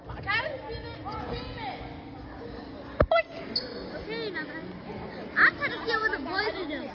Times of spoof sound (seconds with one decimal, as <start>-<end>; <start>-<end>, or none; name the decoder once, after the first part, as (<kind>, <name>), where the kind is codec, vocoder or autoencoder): 1.0-1.6 (vocoder, Vocos); 6.0-6.9